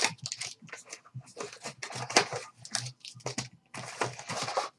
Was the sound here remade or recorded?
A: recorded